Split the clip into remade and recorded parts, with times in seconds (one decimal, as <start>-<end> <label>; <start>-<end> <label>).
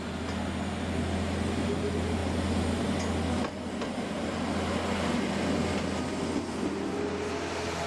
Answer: 0.0-7.9 recorded